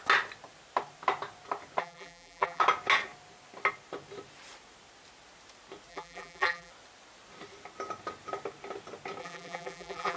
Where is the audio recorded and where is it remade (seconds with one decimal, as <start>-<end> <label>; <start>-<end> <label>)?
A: 0.0-1.8 recorded; 1.8-2.6 remade; 2.6-5.9 recorded; 5.9-6.7 remade; 6.7-9.2 recorded; 9.2-10.2 remade